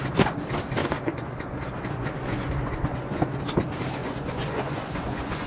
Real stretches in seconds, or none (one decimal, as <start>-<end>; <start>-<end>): 0.0-0.8; 3.4-4.0